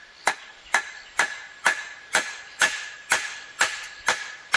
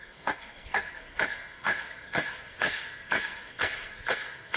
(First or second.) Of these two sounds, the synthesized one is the second